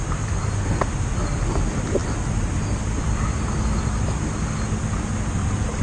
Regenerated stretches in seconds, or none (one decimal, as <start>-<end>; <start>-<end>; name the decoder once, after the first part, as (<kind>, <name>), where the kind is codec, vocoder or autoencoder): none

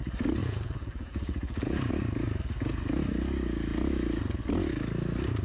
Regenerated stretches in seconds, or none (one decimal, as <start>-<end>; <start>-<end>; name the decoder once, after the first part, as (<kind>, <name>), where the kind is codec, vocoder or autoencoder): 0.4-1.9 (vocoder, BigVGAN v2)

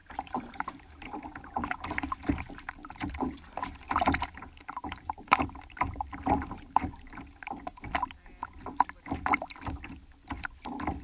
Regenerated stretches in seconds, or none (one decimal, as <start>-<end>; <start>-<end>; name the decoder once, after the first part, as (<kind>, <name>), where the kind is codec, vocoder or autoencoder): 0.0-3.1 (vocoder, BigVGAN v2); 3.6-6.9

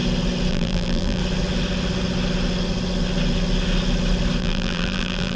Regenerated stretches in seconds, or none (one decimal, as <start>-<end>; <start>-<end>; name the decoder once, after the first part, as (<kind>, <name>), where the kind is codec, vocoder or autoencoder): 0.5-1.2 (vocoder, BigVGAN v2); 4.4-5.4

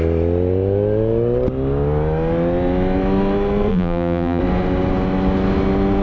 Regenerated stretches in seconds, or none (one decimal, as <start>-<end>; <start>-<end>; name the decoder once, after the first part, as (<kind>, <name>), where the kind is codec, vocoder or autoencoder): 3.7-4.4 (vocoder, BigVGAN v2)

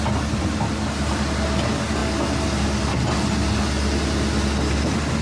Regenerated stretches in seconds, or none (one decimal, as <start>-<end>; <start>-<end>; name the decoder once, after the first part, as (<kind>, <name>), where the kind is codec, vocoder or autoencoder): none

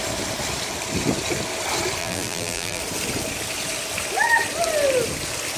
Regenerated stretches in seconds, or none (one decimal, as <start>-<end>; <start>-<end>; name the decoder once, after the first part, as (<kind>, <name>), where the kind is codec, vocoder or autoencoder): 2.0-2.8 (vocoder, BigVGAN v2)